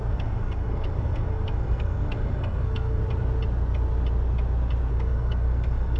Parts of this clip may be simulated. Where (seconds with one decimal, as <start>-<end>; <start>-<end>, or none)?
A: 0.0-3.0; 4.9-6.0